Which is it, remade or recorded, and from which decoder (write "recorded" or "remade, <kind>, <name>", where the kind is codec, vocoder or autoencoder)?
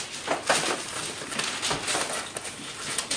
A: recorded